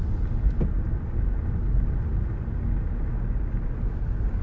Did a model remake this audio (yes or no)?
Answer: no